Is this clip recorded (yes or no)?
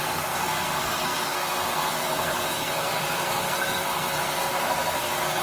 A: no